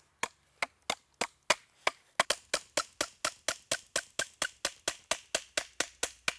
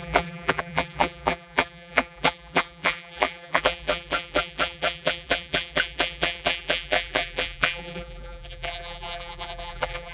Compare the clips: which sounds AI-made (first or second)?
second